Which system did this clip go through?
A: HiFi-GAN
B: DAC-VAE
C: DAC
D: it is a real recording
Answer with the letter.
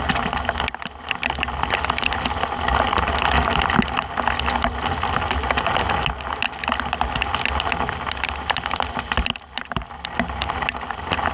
D